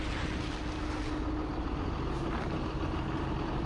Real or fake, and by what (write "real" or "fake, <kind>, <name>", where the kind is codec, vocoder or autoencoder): real